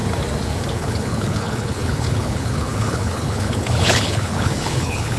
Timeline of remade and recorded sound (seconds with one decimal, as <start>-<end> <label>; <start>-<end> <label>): 0.0-0.7 recorded; 0.7-5.2 remade